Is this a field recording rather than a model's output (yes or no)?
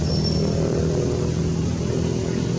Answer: yes